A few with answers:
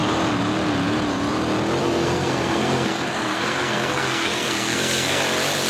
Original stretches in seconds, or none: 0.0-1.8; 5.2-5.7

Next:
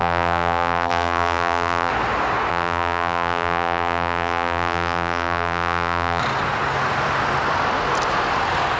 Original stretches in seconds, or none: 1.9-2.5; 6.2-8.8

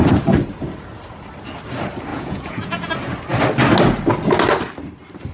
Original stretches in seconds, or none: 0.0-2.1; 2.9-5.3

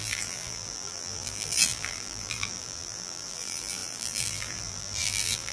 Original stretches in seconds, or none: none

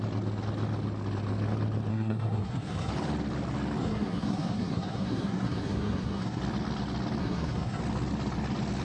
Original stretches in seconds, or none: 0.0-1.9; 2.9-3.8; 6.4-7.2; 7.8-8.8

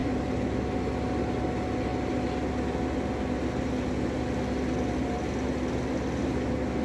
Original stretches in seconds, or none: 0.0-6.8